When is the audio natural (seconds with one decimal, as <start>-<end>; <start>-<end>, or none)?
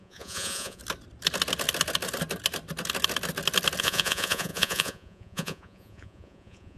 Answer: 0.8-3.8